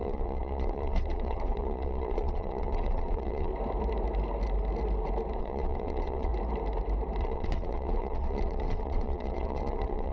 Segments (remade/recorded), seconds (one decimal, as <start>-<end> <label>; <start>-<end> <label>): 0.0-3.5 remade; 3.5-5.4 recorded; 5.4-6.3 remade; 6.3-7.2 recorded; 7.2-10.1 remade